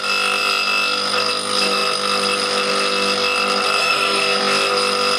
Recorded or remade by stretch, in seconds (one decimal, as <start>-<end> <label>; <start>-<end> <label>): 0.0-3.8 recorded; 3.8-4.4 remade; 4.4-5.2 recorded